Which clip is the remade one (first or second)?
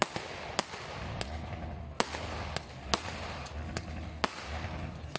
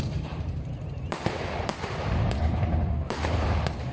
second